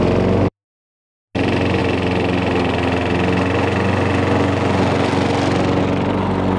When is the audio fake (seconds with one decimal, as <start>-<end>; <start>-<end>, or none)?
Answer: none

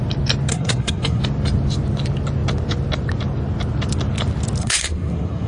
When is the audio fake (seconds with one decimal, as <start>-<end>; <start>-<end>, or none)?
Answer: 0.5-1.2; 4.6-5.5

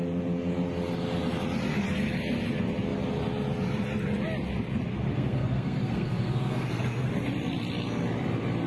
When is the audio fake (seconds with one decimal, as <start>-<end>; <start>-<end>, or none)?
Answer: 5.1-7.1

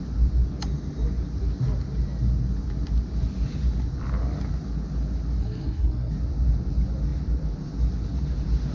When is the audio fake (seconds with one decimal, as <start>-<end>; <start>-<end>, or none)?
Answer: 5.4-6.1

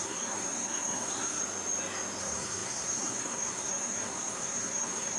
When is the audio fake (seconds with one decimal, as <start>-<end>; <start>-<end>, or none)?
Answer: 0.0-1.4; 2.2-5.2